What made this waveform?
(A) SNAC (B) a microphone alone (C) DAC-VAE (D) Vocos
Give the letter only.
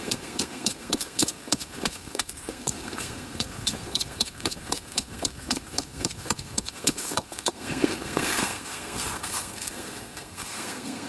A